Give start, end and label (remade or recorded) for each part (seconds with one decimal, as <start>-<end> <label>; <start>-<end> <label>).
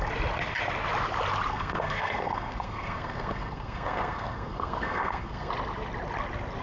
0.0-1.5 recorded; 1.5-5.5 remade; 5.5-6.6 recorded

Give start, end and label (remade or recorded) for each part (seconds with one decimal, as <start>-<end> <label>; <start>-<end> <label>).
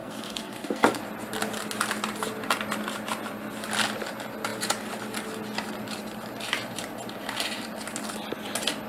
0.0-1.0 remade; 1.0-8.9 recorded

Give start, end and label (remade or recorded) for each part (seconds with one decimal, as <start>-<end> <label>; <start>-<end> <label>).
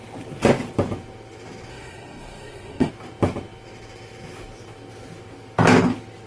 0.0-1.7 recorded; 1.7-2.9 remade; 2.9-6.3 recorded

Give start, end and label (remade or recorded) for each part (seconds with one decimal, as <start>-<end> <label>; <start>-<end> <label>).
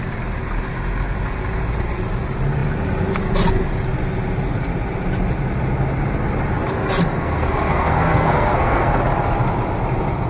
0.0-7.1 recorded; 7.1-9.0 remade; 9.0-10.3 recorded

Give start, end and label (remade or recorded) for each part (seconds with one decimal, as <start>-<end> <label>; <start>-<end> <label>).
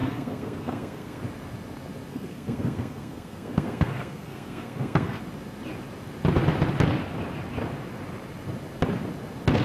0.0-1.2 remade; 1.2-2.1 recorded; 2.1-5.2 remade; 5.2-9.6 recorded